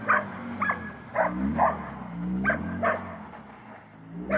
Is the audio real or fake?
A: real